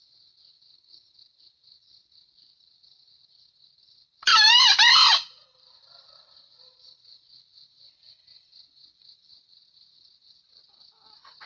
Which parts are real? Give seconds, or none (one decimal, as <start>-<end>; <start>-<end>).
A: 0.0-4.3; 6.1-11.5